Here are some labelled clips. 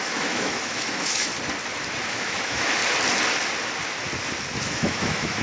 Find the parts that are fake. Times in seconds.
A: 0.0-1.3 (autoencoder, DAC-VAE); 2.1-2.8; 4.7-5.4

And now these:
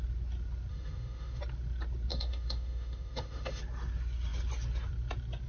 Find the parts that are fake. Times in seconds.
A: 0.7-1.4 (autoencoder, DAC-VAE); 2.1-3.6

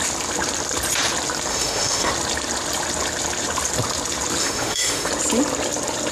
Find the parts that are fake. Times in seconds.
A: 1.5-2.1 (autoencoder, DAC-VAE); 4.4-5.1

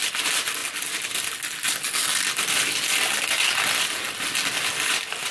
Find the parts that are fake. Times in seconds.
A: none

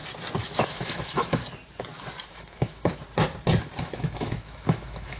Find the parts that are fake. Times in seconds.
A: 0.6-1.4 (autoencoder, DAC-VAE); 2.3-2.9; 3.8-5.2